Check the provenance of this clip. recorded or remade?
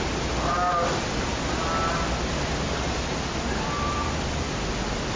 recorded